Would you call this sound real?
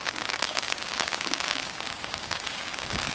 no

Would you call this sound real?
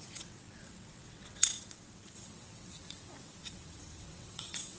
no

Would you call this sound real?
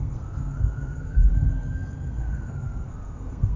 no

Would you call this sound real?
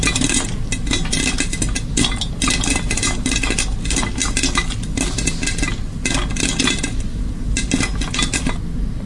yes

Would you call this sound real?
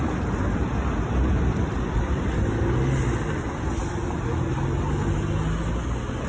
yes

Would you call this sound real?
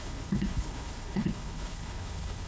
no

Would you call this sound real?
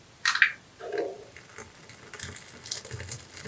yes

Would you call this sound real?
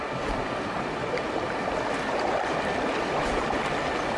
yes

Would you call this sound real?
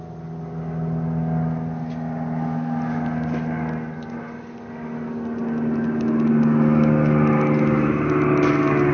yes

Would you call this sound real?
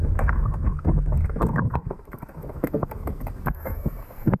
no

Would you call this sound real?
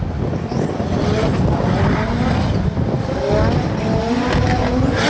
yes